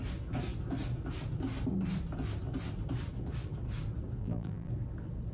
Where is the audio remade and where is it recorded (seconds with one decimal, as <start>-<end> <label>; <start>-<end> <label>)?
0.0-4.2 recorded; 4.2-4.7 remade; 4.7-5.3 recorded